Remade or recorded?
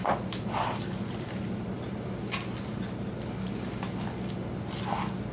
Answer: recorded